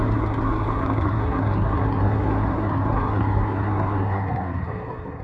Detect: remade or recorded remade